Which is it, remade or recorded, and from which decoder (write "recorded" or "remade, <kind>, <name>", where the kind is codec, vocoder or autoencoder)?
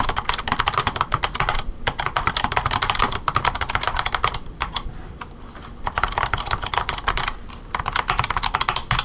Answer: remade, vocoder, BigVGAN v2